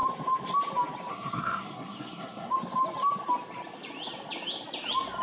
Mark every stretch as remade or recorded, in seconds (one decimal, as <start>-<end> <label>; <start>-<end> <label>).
0.0-1.1 recorded; 1.1-2.5 remade; 2.5-5.2 recorded